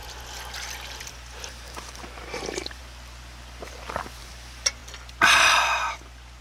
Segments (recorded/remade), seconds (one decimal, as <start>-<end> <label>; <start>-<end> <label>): 0.0-1.0 recorded; 1.0-2.8 remade; 2.8-4.2 recorded; 4.2-4.8 remade; 4.8-6.4 recorded